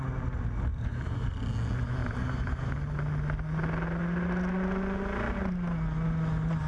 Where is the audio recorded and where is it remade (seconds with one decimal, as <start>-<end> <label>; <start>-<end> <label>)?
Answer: 0.0-0.7 recorded; 0.7-1.3 remade; 1.3-2.0 recorded; 2.0-2.7 remade; 2.7-6.7 recorded